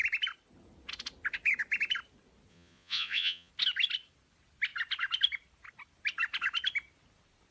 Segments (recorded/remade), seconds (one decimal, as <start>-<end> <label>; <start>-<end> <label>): 0.0-2.5 recorded; 2.5-3.5 remade; 3.5-7.5 recorded